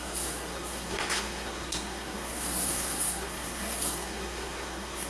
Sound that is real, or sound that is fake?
fake